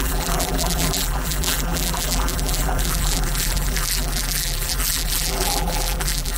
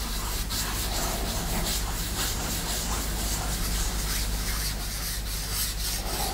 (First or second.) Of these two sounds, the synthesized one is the first